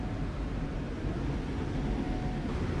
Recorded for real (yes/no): yes